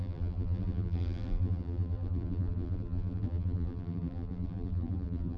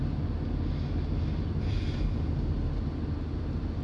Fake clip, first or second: first